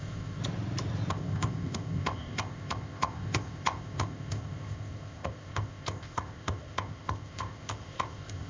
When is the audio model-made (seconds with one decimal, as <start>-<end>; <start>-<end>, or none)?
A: 0.0-0.4; 1.1-8.5